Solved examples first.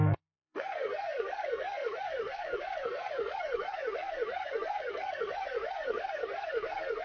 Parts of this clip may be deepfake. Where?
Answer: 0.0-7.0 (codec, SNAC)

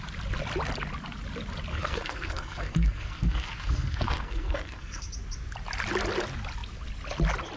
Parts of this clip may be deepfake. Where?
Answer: 1.7-5.1 (codec, SNAC)

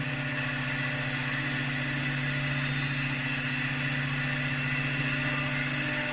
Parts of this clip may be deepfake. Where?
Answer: none

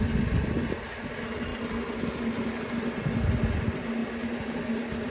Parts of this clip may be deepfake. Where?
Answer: none

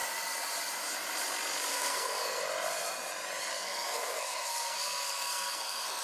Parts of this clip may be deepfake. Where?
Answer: 1.7-2.4 (codec, SNAC); 3.5-6.0

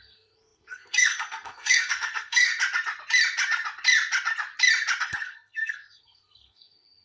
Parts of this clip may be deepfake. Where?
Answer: 0.0-2.5 (codec, SNAC); 5.0-7.0

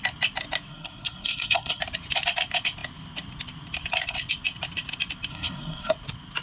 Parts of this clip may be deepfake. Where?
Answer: 0.7-1.8 (codec, SNAC); 5.3-5.9

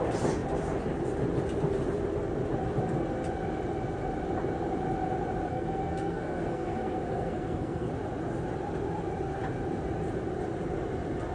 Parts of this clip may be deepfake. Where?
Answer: 5.5-7.9 (codec, SNAC)